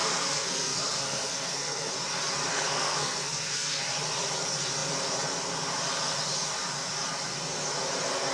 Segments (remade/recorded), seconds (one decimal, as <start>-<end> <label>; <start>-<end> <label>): 0.0-1.9 remade; 1.9-2.5 recorded; 2.5-3.8 remade; 3.8-8.3 recorded